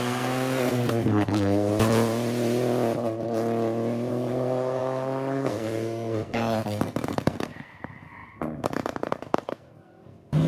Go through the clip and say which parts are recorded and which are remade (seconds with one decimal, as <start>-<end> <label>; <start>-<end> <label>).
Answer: 0.0-1.7 remade; 1.7-4.1 recorded; 4.1-10.5 remade